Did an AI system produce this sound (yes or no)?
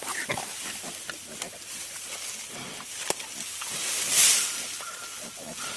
no